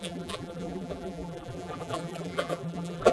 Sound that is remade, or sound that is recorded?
remade